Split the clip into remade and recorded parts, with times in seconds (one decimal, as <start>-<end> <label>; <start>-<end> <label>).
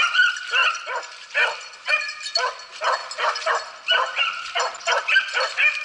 0.0-3.0 remade; 3.0-4.8 recorded; 4.8-5.8 remade